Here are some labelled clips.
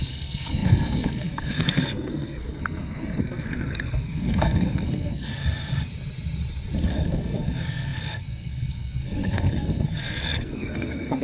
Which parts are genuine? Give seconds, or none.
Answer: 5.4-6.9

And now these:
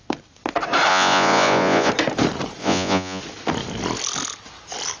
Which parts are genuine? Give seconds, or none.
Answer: 0.0-0.9; 1.9-2.6; 3.2-5.0

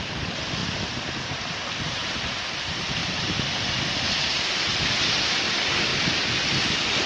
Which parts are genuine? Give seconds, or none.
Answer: 0.6-1.3; 5.9-6.4

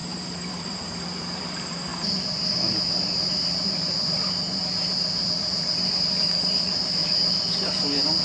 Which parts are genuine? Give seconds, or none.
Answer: 7.0-8.2

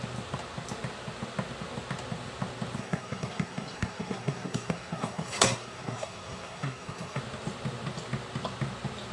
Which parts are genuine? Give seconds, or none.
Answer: 0.0-2.8; 7.2-9.1